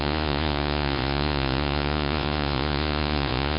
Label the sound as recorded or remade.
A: remade